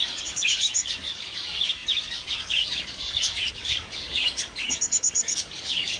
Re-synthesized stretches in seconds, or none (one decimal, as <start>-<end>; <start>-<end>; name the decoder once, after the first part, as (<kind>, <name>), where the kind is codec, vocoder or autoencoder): 0.0-6.0 (codec, DAC)